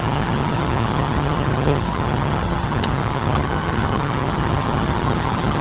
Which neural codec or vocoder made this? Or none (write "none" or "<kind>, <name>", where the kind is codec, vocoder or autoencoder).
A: vocoder, HiFi-GAN